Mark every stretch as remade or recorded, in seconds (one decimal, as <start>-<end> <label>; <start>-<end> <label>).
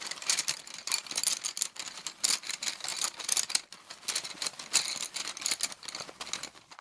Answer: 0.0-6.8 recorded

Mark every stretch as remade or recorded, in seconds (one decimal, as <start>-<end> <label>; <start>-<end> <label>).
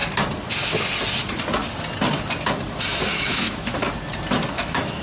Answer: 0.0-3.0 recorded; 3.0-3.8 remade; 3.8-4.5 recorded; 4.5-5.0 remade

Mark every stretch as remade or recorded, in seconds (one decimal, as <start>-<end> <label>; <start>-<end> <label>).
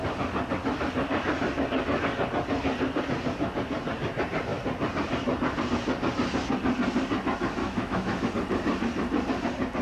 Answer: 0.0-7.6 recorded; 7.6-8.3 remade; 8.3-9.8 recorded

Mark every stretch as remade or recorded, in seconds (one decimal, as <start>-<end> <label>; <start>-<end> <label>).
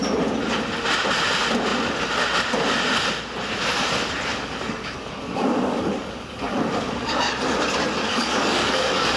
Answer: 0.0-4.3 recorded; 4.3-7.3 remade; 7.3-8.0 recorded; 8.0-9.2 remade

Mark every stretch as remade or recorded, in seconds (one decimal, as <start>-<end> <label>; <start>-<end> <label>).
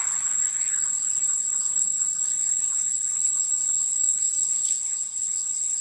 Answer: 0.0-4.4 recorded; 4.4-5.8 remade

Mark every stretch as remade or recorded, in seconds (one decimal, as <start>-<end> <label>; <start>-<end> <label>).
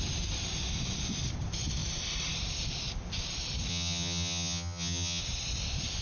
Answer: 0.0-3.7 recorded; 3.7-5.2 remade; 5.2-6.0 recorded